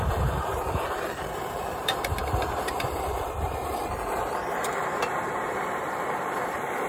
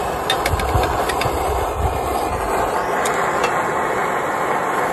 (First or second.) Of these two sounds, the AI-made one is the first